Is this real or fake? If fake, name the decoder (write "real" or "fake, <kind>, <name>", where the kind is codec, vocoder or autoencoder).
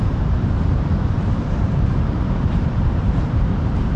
fake, vocoder, BigVGAN v2